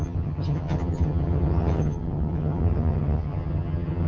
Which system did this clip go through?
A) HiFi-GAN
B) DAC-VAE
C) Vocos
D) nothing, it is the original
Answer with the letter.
A